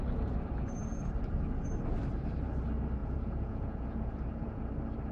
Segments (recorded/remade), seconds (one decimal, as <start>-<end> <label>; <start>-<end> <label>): 0.0-3.0 recorded; 3.0-4.6 remade; 4.6-5.1 recorded